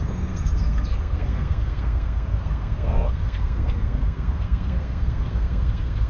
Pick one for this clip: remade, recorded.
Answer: remade